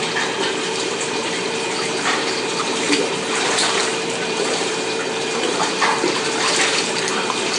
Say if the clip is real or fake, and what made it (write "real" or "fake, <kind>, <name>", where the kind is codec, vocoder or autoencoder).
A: fake, vocoder, BigVGAN v2